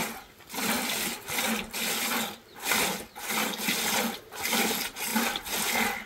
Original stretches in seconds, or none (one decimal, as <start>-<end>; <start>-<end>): 0.0-6.1